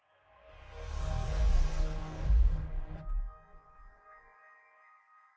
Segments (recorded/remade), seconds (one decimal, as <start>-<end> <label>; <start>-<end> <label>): 0.0-3.2 remade; 3.2-5.4 recorded